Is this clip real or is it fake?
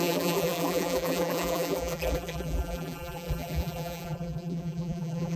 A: fake